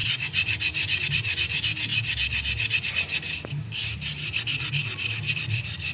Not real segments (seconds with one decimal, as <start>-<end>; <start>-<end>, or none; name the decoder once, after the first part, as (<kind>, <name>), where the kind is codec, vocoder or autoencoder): 1.0-1.9 (vocoder, BigVGAN v2); 2.9-5.9

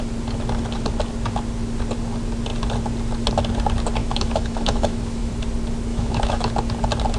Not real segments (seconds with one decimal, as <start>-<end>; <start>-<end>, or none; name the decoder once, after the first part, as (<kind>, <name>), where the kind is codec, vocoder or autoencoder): 4.0-5.3 (autoencoder, DAC-VAE); 5.9-6.5

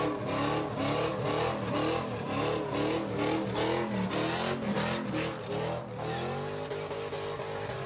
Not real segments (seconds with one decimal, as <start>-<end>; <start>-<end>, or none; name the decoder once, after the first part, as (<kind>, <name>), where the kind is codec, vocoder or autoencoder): none

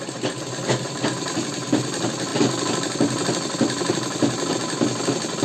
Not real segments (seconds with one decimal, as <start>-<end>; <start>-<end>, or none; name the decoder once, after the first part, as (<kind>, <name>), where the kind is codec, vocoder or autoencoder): none

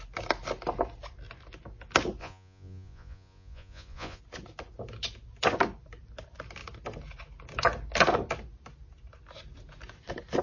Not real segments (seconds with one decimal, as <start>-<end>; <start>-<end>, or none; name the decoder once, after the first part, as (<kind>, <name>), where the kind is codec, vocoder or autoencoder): 2.2-4.2 (vocoder, Vocos)